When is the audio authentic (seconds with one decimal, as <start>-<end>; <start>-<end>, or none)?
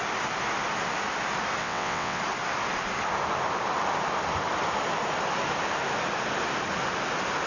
0.0-1.6; 2.2-7.5